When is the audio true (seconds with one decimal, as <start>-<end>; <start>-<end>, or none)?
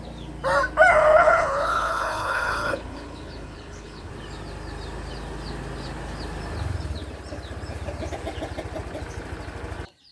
0.0-0.9; 4.1-10.1